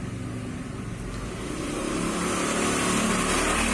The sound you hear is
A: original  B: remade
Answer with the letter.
A